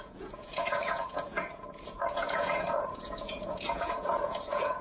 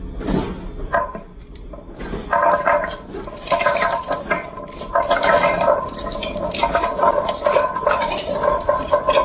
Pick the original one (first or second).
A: second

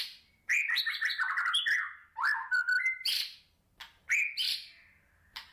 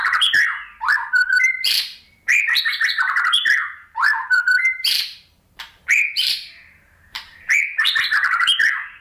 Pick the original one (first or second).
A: first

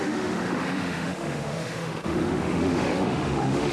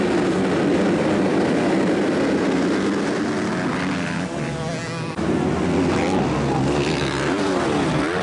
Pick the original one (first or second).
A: second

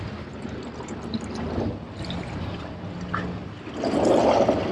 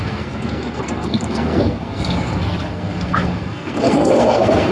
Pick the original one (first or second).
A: first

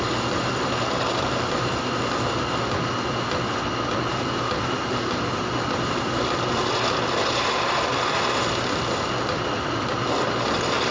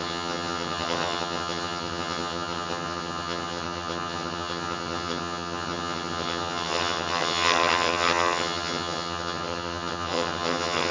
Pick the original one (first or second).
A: first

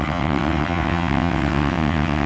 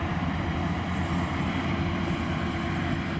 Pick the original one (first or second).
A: second